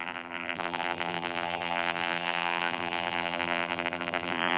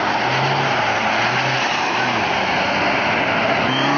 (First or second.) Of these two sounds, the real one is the second